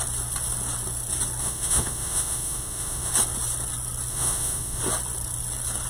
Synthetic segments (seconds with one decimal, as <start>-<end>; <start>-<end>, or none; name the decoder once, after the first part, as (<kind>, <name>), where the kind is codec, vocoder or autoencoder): 1.4-3.1 (autoencoder, DAC-VAE); 4.1-4.8